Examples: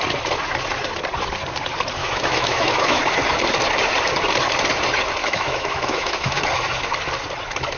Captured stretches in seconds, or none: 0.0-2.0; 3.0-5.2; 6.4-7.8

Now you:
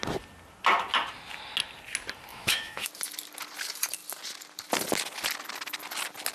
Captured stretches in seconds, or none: 0.0-2.3; 2.9-6.3

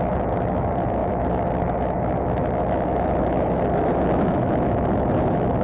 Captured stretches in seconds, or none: none

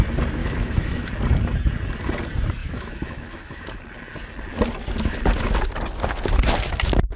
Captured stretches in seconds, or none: 0.0-0.4; 1.1-2.6; 3.8-7.2